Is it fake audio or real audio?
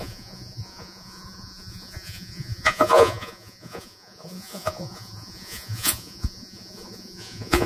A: fake